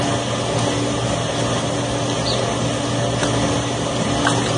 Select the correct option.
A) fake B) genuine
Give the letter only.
B